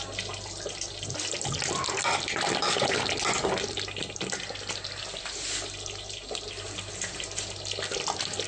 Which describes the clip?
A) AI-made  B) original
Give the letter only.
B